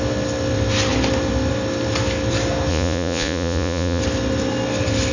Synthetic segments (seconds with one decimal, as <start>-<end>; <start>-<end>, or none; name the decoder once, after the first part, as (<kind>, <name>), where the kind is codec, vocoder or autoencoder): 2.7-4.0 (vocoder, Vocos)